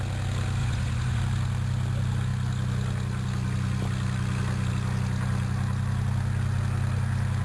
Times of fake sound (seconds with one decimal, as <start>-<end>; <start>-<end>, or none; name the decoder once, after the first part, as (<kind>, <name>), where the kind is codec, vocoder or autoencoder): 0.6-1.2 (vocoder, Vocos)